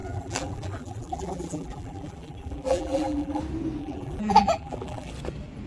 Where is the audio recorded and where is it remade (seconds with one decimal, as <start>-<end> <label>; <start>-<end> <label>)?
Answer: 0.0-3.4 remade; 3.4-3.8 recorded; 3.8-5.1 remade; 5.1-5.7 recorded